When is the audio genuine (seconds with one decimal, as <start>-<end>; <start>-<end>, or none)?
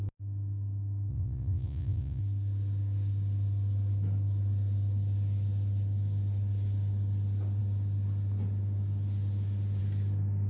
0.0-1.1; 2.2-10.5